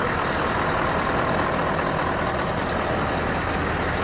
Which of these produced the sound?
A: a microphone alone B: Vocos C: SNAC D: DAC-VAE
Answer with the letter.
A